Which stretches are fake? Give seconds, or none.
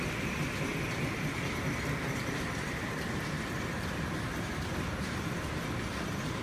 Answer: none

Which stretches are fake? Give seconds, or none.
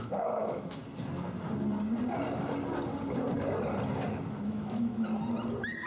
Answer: 0.0-0.8 (autoencoder, DAC-VAE); 4.3-5.1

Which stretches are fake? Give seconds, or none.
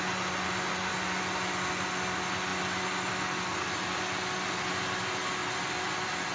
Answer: 5.4-6.3 (vocoder, BigVGAN v2)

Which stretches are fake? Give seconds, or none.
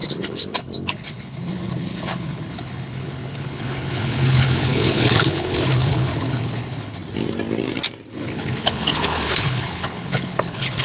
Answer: 0.0-7.0 (codec, HILCodec); 8.1-10.8